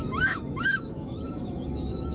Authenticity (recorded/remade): remade